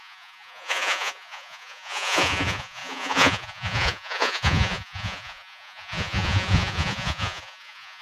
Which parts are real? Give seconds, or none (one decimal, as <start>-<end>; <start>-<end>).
none